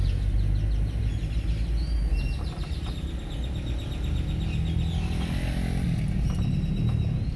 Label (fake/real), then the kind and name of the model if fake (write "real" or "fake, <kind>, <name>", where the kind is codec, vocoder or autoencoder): real